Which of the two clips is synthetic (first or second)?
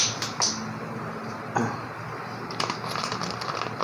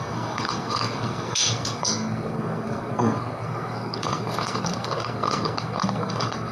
second